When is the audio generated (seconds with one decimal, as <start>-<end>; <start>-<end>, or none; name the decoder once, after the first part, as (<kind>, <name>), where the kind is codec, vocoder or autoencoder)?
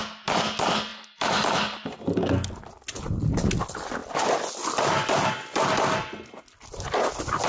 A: 0.9-1.9 (vocoder, BigVGAN v2)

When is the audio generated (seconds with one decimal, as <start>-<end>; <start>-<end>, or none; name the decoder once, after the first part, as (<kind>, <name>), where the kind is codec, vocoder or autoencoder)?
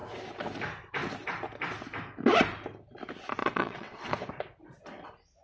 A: 3.4-4.1 (vocoder, WaveNeXt)